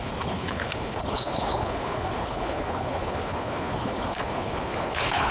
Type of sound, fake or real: fake